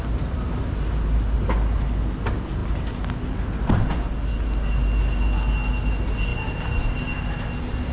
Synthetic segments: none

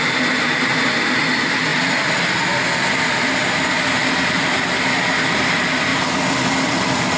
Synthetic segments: none

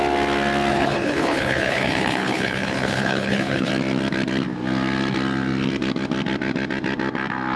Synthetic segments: 0.7-3.7 (codec, HILCodec)

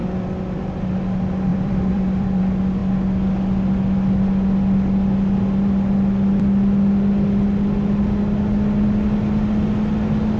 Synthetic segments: 1.5-2.4 (vocoder, BigVGAN v2)

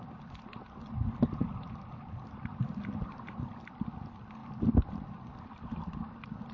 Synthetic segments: none

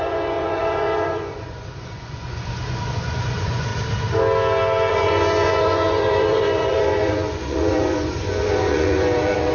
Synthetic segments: 0.0-3.7 (vocoder, Vocos); 4.9-9.5